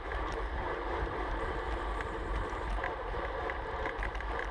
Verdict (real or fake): fake